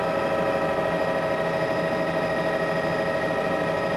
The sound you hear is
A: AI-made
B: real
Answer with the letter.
B